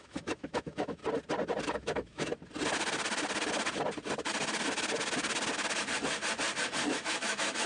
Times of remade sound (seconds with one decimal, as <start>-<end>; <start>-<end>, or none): 0.0-1.0; 1.6-2.3; 6.9-7.7